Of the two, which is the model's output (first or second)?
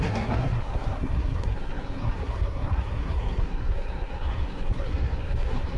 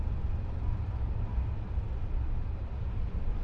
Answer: first